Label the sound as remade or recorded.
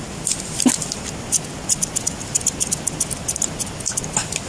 recorded